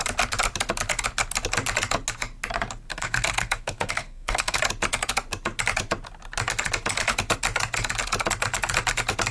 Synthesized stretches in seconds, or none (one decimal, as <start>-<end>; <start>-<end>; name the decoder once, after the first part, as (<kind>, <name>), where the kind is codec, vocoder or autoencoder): 2.9-4.6 (codec, SNAC)